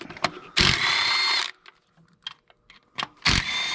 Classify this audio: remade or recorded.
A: recorded